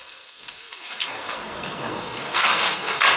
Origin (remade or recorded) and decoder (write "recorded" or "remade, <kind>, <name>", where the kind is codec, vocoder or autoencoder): remade, codec, SNAC